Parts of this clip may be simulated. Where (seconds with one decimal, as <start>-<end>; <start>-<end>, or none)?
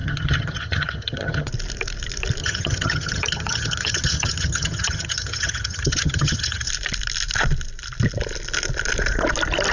0.0-1.5; 2.4-6.7